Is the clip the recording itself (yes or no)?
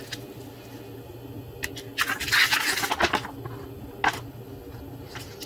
yes